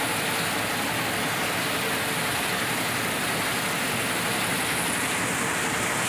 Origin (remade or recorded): recorded